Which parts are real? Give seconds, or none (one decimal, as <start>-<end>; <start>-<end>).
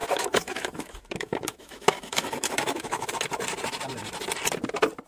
3.1-5.1